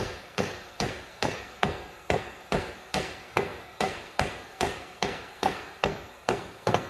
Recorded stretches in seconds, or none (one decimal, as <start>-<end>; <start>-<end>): none